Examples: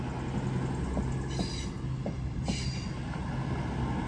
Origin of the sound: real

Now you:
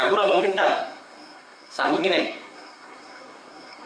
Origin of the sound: fake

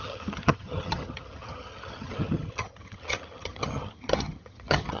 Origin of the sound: fake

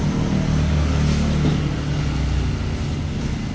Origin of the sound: real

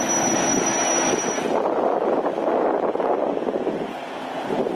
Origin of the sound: real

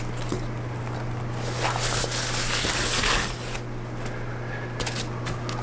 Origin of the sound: real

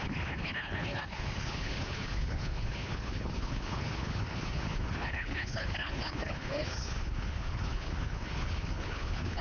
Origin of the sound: fake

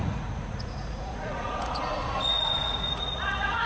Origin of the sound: fake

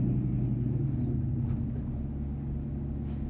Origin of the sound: real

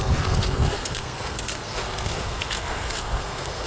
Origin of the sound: fake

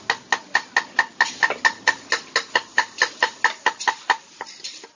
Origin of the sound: real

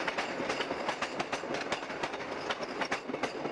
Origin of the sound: real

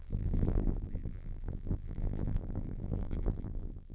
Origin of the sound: fake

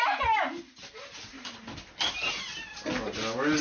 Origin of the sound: real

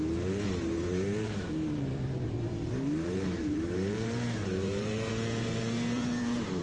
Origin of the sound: fake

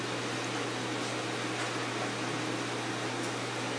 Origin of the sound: real